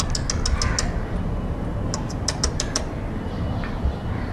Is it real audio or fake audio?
real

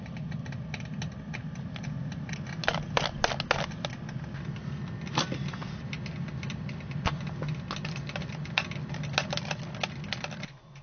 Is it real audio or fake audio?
real